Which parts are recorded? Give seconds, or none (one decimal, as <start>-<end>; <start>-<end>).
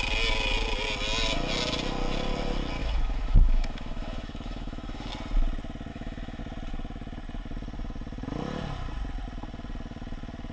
0.0-2.8; 5.1-5.9; 6.4-10.5